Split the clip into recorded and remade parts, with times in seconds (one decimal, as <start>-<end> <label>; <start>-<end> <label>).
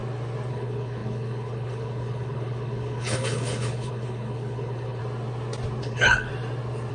0.0-0.5 recorded; 0.5-5.0 remade; 5.0-5.8 recorded; 5.8-6.3 remade; 6.3-6.9 recorded